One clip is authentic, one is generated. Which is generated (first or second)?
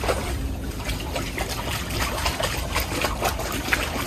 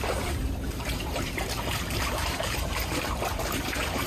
second